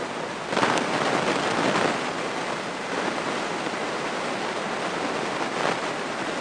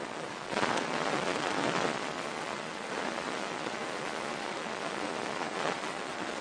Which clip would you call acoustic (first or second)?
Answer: first